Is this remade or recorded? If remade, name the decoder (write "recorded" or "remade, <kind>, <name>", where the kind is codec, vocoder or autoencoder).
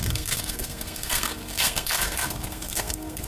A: remade, codec, SNAC